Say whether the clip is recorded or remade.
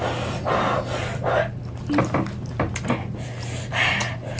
recorded